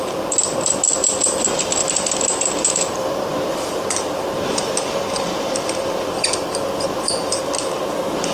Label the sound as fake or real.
real